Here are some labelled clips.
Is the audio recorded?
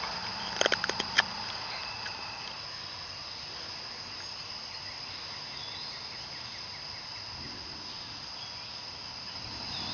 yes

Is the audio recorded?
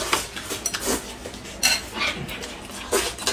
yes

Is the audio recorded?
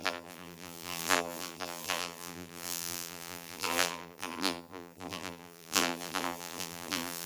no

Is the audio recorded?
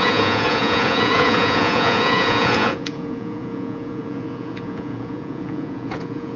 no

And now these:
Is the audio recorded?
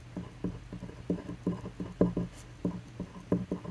yes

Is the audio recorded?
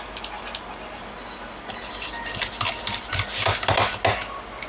yes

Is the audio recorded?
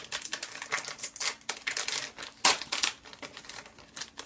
yes